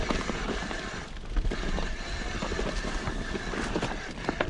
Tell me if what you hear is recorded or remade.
recorded